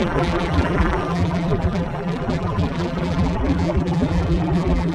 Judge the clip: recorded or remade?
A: remade